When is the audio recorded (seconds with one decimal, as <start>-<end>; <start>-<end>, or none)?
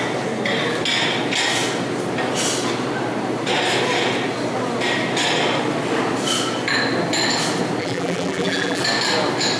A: 0.0-7.8; 8.8-9.6